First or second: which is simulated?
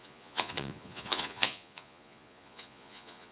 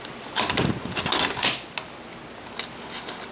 first